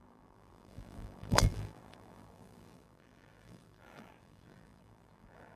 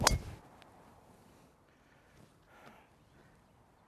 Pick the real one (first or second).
second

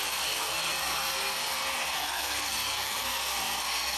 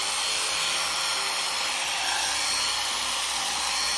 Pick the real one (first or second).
second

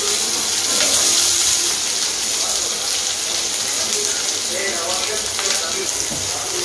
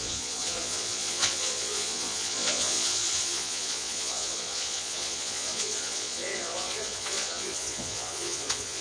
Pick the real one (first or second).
first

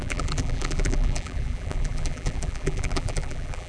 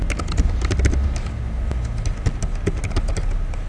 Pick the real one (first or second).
second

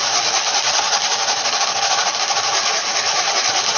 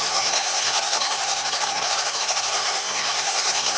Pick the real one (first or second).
first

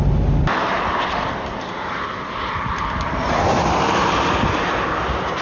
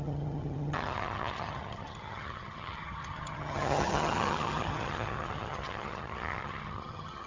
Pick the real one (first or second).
first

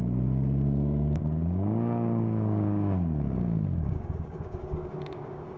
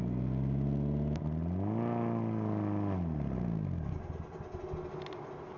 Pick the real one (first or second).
second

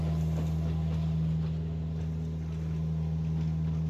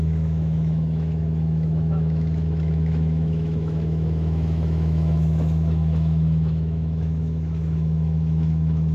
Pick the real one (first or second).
first